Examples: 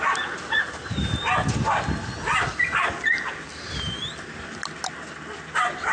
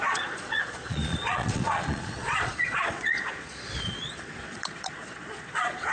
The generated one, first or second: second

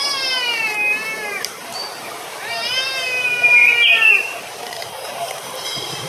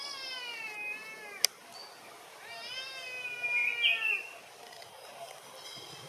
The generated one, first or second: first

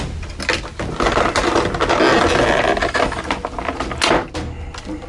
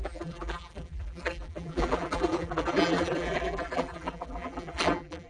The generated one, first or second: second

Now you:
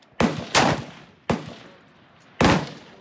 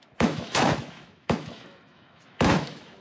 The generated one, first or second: second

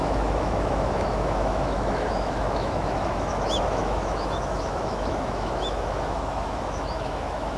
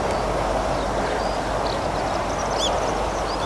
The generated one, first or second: first